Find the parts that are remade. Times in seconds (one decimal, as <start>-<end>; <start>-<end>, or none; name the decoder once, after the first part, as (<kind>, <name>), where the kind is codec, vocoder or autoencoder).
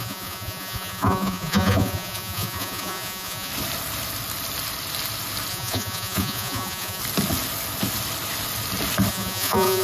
0.0-3.5 (vocoder, Vocos); 5.5-7.0; 9.1-9.8